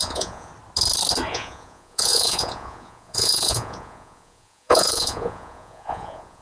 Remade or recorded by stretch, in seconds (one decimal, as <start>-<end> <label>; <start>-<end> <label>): 0.0-0.5 remade; 0.5-1.3 recorded; 1.3-6.4 remade